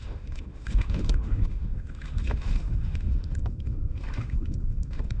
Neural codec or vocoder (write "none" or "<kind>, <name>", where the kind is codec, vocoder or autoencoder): autoencoder, DAC-VAE